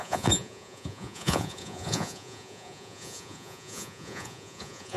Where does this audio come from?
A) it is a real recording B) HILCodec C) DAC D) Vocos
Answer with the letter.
D